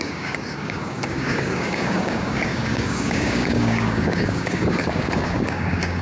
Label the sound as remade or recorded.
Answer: remade